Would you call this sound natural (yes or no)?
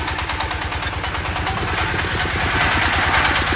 yes